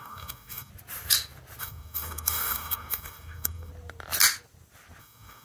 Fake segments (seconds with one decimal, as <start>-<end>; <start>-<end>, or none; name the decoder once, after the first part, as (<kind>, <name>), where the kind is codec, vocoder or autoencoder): 0.0-0.7 (codec, DAC); 1.6-3.7; 5.0-5.4